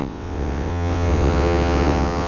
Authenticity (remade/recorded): remade